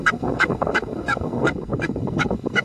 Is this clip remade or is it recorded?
remade